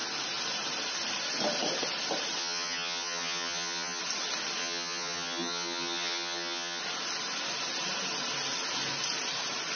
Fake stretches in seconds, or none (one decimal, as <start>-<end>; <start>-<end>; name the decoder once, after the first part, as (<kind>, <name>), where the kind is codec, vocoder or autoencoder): 2.4-4.0 (vocoder, HiFi-GAN); 4.6-6.8